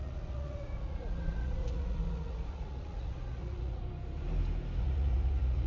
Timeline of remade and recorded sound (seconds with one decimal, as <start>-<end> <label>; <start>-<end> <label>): 0.0-3.8 remade; 3.8-4.8 recorded; 4.8-5.7 remade